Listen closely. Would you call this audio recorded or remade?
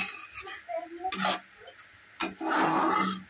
recorded